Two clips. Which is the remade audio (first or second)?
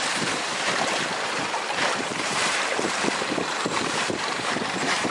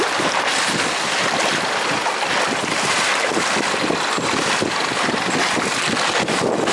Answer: first